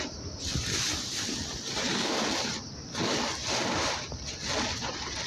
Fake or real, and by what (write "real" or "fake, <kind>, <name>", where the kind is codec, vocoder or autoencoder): real